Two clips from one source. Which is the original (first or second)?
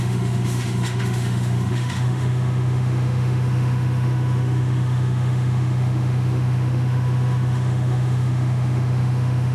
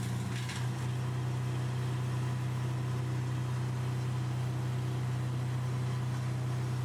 second